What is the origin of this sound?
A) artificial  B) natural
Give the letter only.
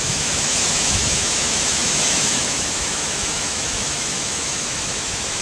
A